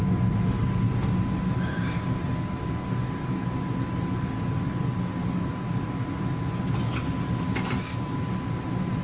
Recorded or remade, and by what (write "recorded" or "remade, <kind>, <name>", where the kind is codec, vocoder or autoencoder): recorded